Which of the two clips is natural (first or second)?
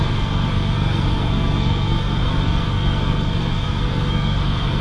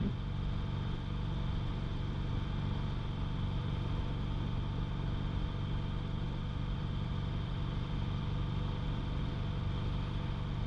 second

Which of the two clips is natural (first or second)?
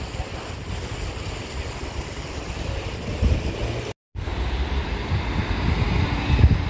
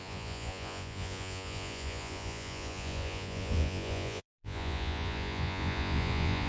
first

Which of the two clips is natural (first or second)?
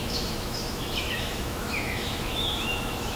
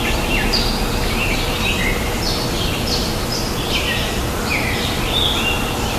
second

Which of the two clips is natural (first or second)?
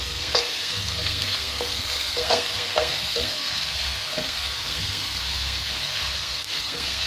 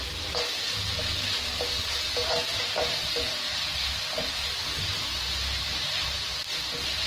second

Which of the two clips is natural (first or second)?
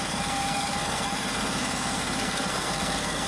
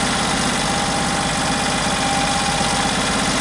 second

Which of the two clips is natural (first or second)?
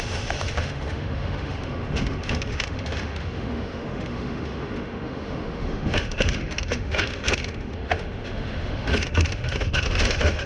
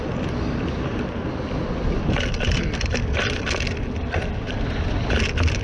second